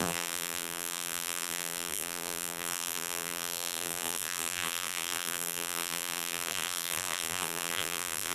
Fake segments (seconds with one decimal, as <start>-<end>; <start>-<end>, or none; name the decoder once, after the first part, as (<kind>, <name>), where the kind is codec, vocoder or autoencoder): 0.0-8.3 (vocoder, BigVGAN v2)